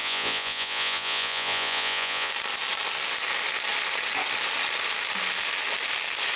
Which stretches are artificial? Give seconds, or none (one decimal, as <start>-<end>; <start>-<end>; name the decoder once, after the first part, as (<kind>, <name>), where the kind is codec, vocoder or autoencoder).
0.0-2.3 (vocoder, Vocos)